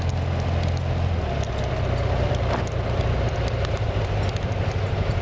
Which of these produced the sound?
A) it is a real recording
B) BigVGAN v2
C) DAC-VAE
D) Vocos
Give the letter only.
A